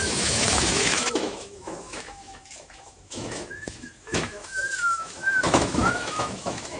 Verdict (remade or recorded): remade